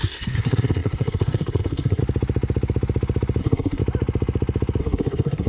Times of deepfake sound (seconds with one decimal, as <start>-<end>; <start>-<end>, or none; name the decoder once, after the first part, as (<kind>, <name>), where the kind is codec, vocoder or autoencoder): 0.0-2.0 (codec, SNAC); 3.4-3.8; 4.8-5.5